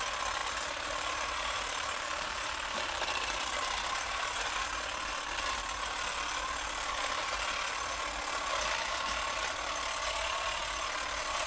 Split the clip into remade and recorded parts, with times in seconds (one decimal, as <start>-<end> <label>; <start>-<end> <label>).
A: 0.0-0.4 recorded; 0.4-5.1 remade; 5.1-11.5 recorded